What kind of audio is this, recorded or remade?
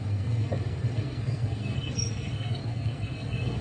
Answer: remade